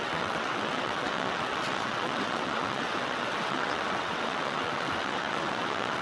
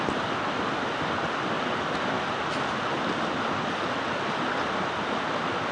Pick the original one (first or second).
second